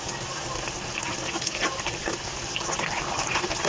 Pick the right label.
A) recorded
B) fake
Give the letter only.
A